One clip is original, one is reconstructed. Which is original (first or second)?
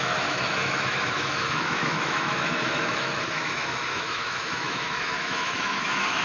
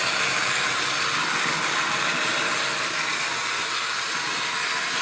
second